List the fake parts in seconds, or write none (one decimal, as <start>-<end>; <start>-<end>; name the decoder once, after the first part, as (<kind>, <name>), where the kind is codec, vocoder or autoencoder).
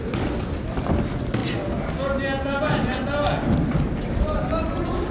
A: none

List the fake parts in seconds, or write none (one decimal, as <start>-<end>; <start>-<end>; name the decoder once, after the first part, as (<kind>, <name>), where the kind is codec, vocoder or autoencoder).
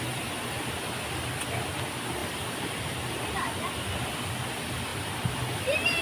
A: 2.2-4.0 (vocoder, BigVGAN v2); 4.9-6.0